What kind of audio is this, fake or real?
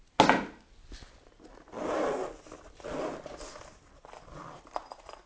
real